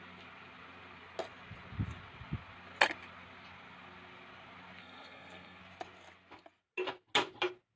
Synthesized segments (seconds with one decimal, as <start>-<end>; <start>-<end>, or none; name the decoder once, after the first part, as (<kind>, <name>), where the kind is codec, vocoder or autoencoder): 4.8-5.6 (codec, SNAC)